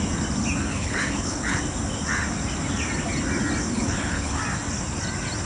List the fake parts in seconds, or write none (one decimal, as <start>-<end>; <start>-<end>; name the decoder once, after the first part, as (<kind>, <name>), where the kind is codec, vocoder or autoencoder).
0.7-1.6 (codec, HILCodec); 3.7-4.4